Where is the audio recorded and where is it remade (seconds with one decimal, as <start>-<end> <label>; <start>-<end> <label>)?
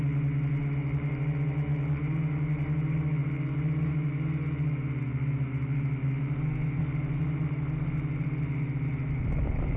0.0-9.8 recorded